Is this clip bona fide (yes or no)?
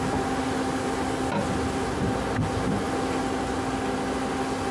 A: yes